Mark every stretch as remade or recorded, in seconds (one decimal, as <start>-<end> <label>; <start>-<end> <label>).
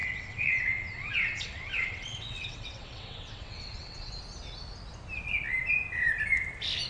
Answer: 0.0-4.1 remade; 4.1-6.9 recorded